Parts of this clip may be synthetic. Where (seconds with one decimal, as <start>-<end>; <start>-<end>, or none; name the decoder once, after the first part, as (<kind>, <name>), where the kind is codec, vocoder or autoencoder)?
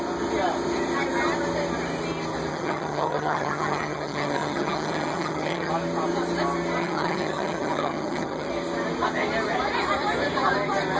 2.5-5.7 (vocoder, HiFi-GAN); 6.8-8.5